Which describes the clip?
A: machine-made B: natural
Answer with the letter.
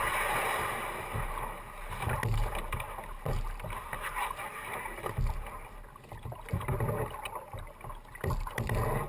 B